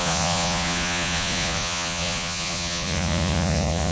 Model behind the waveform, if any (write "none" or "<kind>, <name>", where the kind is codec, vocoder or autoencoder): vocoder, Vocos